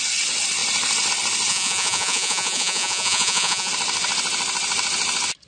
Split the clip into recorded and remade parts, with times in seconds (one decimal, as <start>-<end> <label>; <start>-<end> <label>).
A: 0.0-1.5 recorded; 1.5-3.7 remade; 3.7-5.5 recorded